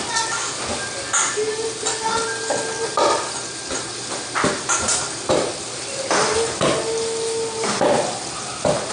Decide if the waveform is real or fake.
real